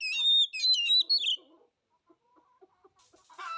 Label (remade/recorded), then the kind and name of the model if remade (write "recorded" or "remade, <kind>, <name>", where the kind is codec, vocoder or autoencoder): recorded